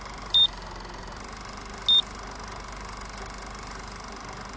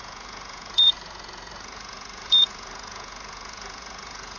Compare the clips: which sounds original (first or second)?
first